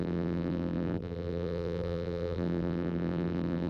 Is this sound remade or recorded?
remade